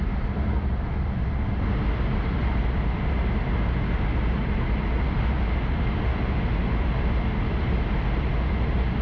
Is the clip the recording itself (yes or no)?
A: yes